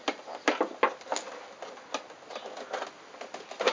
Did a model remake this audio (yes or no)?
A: no